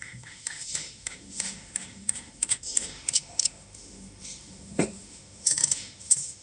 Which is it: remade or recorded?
remade